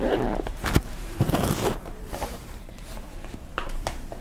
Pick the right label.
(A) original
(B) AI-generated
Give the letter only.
B